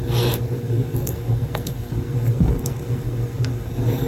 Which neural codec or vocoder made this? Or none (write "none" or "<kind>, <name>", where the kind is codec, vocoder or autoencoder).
codec, SNAC